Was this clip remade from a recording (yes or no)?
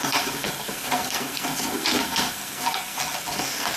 yes